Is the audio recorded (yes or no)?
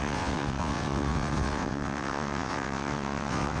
no